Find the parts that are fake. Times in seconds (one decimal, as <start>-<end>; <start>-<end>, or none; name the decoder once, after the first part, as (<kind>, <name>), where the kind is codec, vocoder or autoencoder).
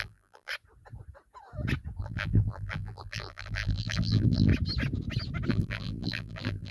0.0-0.5 (vocoder, BigVGAN v2); 2.0-4.5; 5.5-6.7